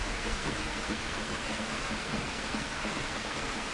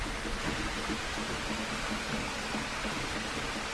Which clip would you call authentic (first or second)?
second